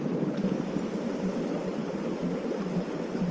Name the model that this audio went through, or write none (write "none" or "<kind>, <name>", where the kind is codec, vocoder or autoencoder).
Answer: none